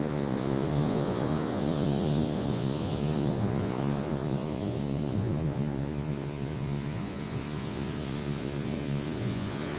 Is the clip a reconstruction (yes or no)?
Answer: yes